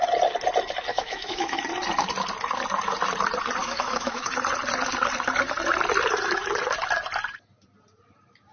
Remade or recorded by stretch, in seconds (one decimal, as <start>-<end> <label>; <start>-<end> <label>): 0.0-0.9 recorded; 0.9-1.6 remade; 1.6-3.6 recorded; 3.6-4.3 remade; 4.3-8.5 recorded